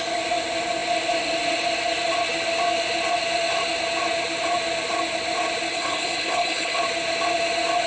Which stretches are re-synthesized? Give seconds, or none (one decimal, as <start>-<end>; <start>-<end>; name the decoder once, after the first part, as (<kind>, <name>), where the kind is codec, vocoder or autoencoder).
5.7-6.8 (codec, HILCodec)